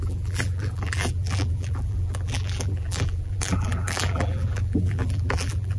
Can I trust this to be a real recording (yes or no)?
no